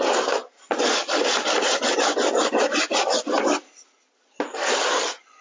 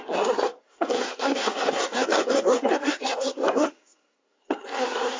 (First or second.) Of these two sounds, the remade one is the second